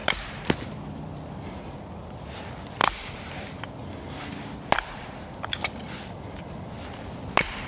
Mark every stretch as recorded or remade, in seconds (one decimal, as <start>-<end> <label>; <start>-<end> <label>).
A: 0.0-2.4 remade; 2.4-7.7 recorded

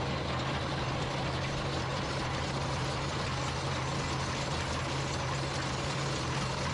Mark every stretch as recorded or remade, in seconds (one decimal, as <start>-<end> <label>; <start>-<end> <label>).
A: 0.0-6.7 recorded

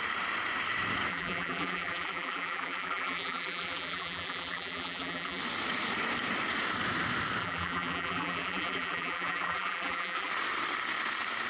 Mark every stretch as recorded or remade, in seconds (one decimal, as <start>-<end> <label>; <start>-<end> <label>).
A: 0.0-1.1 recorded; 1.1-5.4 remade; 5.4-7.4 recorded; 7.4-10.3 remade; 10.3-11.5 recorded

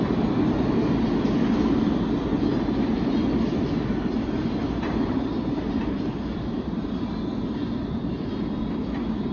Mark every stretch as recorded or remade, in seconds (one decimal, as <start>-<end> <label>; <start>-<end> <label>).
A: 0.0-4.4 recorded; 4.4-7.1 remade; 7.1-9.3 recorded

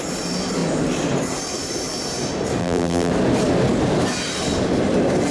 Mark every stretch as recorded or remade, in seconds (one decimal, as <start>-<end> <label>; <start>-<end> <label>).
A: 0.0-2.6 recorded; 2.6-3.1 remade; 3.1-5.3 recorded

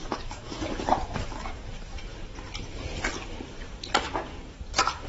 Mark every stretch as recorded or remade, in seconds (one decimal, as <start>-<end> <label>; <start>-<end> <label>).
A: 0.0-3.1 remade; 3.1-5.1 recorded

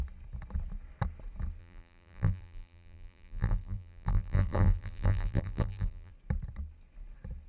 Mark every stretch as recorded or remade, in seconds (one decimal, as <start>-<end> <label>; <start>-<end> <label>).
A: 0.0-1.6 recorded; 1.6-6.1 remade; 6.1-7.5 recorded

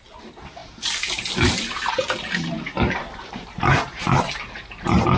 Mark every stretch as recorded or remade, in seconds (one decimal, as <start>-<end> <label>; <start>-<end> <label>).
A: 0.0-0.6 recorded; 0.6-1.9 remade; 1.9-3.0 recorded; 3.0-5.2 remade